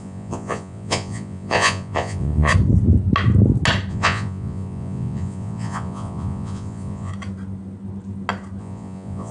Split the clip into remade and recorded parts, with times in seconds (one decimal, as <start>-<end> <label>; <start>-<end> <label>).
0.0-2.5 remade; 2.5-3.9 recorded; 3.9-7.1 remade; 7.1-8.6 recorded; 8.6-9.3 remade

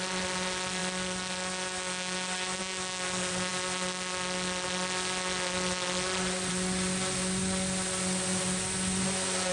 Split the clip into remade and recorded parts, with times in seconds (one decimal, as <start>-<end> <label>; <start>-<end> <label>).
0.0-9.5 recorded